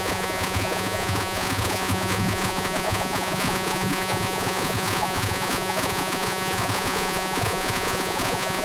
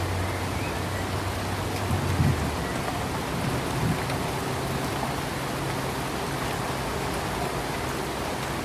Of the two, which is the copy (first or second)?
first